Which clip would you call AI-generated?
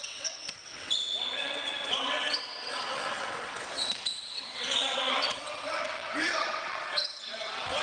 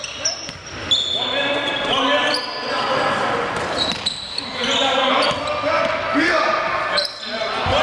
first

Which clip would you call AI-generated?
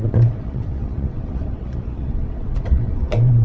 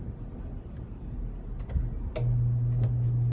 first